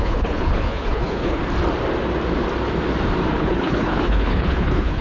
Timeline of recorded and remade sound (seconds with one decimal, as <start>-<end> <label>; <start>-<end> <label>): 0.0-1.4 remade; 1.4-3.4 recorded; 3.4-5.0 remade